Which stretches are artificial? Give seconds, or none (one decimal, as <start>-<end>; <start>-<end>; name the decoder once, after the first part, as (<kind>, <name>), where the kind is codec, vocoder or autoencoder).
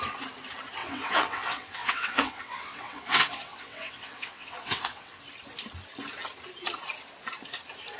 0.8-5.2 (vocoder, WaveNeXt)